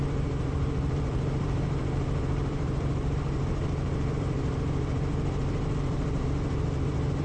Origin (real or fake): fake